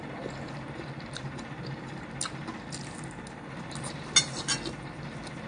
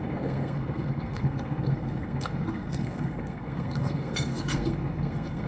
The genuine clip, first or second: first